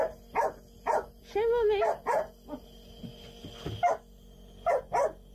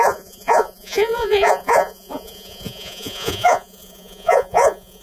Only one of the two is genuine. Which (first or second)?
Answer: first